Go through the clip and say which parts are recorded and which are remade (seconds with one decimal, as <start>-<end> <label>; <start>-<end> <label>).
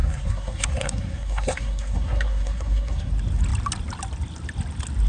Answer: 0.0-3.1 remade; 3.1-5.1 recorded